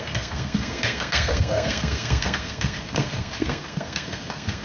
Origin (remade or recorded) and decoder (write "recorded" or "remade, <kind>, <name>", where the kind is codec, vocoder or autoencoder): remade, codec, SNAC